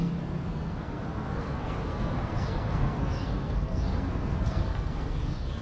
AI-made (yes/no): yes